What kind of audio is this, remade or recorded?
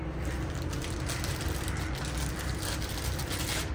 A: recorded